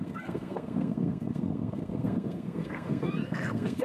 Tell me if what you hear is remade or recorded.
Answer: remade